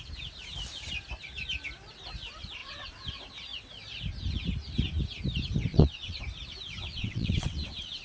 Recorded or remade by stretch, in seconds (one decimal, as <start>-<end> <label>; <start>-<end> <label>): 0.0-2.6 recorded; 2.6-3.1 remade; 3.1-5.7 recorded; 5.7-6.2 remade; 6.2-6.9 recorded; 6.9-8.0 remade